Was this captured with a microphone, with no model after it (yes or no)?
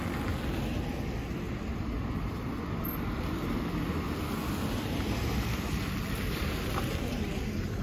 yes